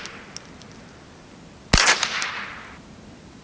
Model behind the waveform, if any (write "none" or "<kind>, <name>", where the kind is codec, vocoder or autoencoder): none